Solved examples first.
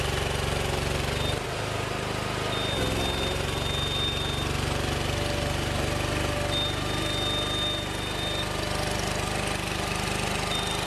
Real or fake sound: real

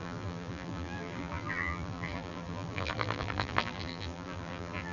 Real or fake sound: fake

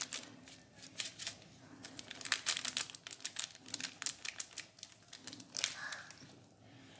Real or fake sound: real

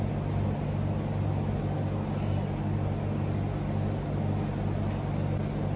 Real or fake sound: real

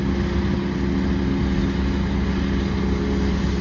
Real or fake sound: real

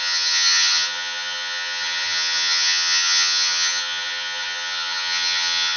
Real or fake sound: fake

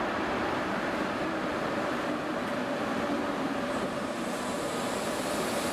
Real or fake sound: fake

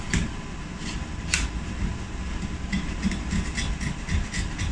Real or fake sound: real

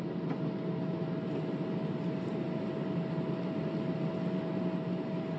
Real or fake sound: real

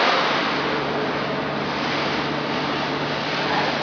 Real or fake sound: real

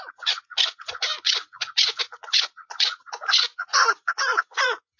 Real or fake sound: fake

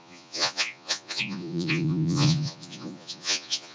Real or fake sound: fake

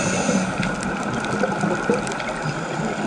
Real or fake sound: real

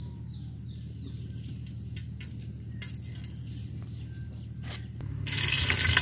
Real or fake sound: real